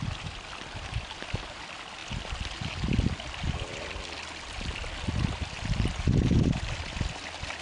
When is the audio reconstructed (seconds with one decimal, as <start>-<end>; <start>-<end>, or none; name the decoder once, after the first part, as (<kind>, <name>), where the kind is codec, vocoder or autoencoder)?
none